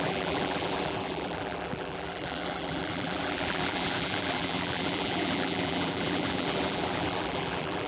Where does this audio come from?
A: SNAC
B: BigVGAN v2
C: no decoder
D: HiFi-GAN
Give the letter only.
B